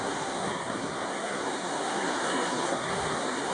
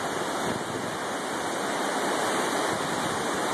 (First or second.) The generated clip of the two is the first